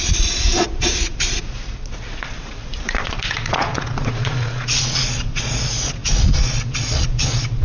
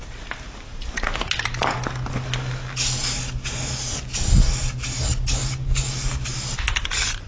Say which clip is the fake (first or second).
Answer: first